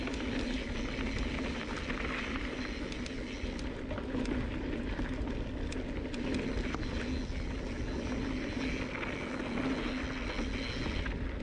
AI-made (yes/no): no